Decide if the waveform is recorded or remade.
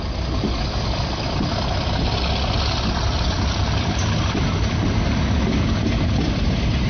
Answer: recorded